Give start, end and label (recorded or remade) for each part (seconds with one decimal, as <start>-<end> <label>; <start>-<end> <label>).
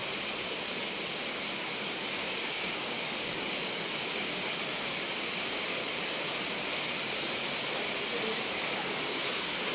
0.0-1.9 recorded; 1.9-5.8 remade; 5.8-8.6 recorded; 8.6-9.7 remade